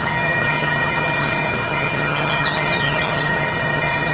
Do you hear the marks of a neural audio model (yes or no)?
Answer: yes